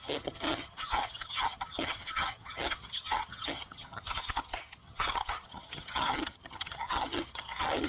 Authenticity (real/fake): fake